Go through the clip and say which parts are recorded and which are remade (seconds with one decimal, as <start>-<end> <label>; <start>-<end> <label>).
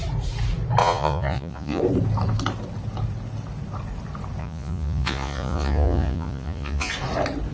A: 0.0-0.8 recorded; 0.8-1.8 remade; 1.8-4.4 recorded; 4.4-6.9 remade; 6.9-7.5 recorded